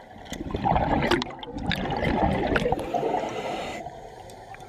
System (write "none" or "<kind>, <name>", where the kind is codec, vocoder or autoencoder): none